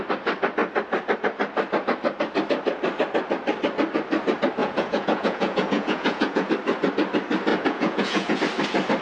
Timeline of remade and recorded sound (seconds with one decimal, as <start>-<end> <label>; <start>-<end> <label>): 0.0-4.6 recorded; 4.6-6.5 remade; 6.5-7.5 recorded; 7.5-8.4 remade; 8.4-9.0 recorded